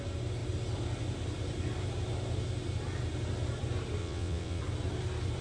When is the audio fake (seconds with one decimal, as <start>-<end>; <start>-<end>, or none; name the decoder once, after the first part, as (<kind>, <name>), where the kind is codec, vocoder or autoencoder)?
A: 4.0-4.6 (vocoder, WaveNeXt)